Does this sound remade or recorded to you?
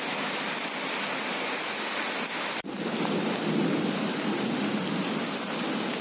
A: recorded